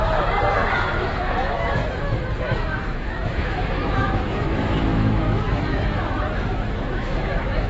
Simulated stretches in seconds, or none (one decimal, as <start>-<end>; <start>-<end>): 0.7-1.8; 2.4-7.7